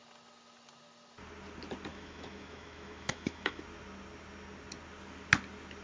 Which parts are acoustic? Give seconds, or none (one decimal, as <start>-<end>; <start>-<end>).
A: 0.0-1.9; 3.6-5.8